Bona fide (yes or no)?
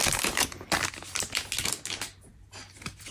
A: yes